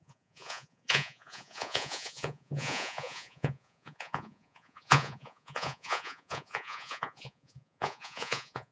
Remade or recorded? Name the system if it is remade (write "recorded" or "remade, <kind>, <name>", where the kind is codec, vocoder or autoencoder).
remade, vocoder, Vocos